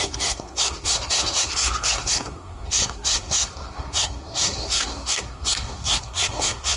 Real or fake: fake